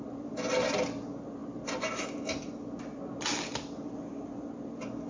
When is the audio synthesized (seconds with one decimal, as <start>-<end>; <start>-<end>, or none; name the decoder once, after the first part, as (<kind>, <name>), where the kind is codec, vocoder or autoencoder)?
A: none